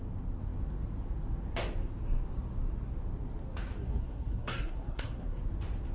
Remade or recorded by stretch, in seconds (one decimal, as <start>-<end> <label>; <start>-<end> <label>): 0.0-3.8 recorded; 3.8-5.4 remade; 5.4-5.9 recorded